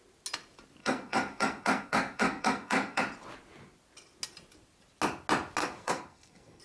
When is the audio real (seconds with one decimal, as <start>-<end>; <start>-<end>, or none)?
0.0-0.8; 3.0-5.6